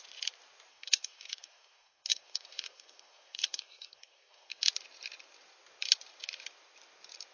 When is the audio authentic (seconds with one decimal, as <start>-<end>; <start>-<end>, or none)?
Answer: 0.0-0.7; 4.6-7.3